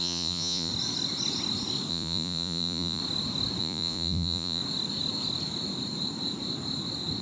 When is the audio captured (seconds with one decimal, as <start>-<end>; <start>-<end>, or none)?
0.7-1.9; 3.0-3.6; 4.6-7.2